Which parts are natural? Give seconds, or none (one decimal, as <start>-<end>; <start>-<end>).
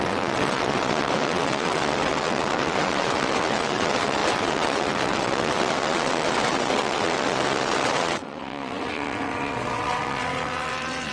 none